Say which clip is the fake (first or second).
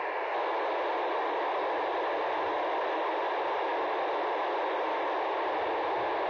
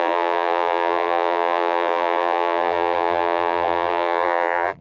second